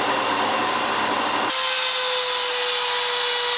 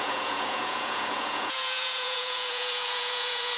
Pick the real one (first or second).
first